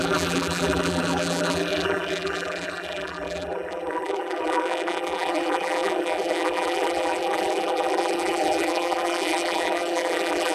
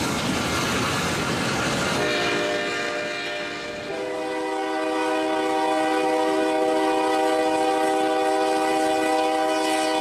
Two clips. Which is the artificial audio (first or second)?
first